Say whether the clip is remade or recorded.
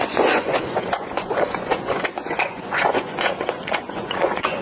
remade